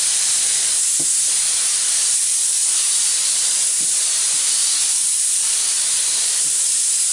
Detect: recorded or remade remade